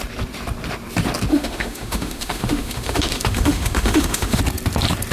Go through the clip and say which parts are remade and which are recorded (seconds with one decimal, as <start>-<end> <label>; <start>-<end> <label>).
0.0-1.3 recorded; 1.3-4.4 remade; 4.4-5.1 recorded